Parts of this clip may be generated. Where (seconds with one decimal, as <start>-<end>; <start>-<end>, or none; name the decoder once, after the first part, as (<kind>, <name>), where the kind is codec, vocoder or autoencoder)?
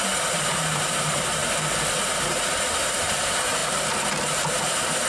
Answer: 0.0-1.4 (vocoder, BigVGAN v2); 1.9-3.6; 4.1-5.1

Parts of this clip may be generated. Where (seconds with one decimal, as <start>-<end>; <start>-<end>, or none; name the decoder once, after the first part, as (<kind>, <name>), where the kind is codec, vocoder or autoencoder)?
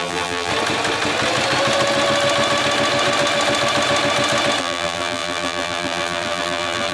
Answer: 0.0-0.5 (vocoder, BigVGAN v2); 4.6-6.9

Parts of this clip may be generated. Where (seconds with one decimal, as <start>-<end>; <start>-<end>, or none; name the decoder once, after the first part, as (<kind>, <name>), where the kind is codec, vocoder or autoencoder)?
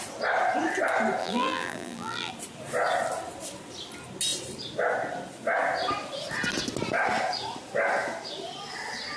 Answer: 1.2-2.3 (vocoder, BigVGAN v2)